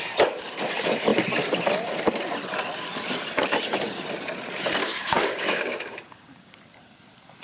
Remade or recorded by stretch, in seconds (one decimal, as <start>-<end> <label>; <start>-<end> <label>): 0.0-4.8 recorded; 4.8-6.6 remade; 6.6-7.4 recorded